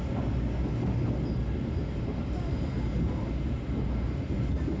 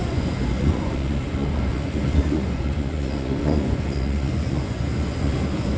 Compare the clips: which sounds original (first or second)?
first